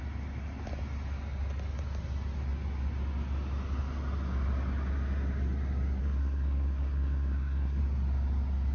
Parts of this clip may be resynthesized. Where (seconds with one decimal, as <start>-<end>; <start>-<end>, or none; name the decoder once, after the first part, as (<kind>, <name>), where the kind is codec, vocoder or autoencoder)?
6.0-7.8 (codec, SNAC)